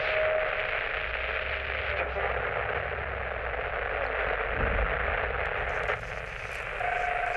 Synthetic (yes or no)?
no